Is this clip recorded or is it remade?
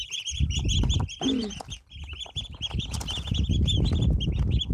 recorded